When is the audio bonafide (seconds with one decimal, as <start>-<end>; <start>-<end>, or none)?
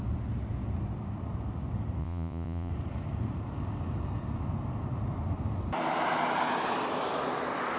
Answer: 0.0-2.0; 2.7-7.8